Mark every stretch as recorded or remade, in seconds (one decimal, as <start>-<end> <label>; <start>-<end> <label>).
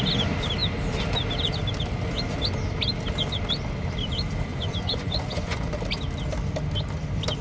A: 0.0-4.5 recorded; 4.5-5.8 remade; 5.8-7.4 recorded